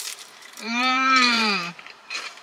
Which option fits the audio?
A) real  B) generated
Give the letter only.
B